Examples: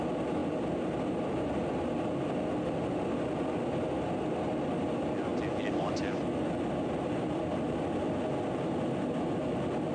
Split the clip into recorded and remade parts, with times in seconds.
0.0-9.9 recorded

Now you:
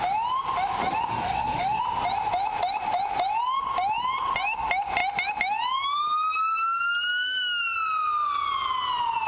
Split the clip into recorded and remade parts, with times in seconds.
0.0-1.1 recorded; 1.1-1.8 remade; 1.8-7.1 recorded; 7.1-7.6 remade; 7.6-9.3 recorded